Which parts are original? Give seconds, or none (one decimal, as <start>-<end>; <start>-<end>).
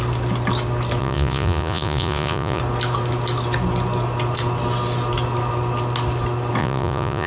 0.0-1.0; 2.6-6.6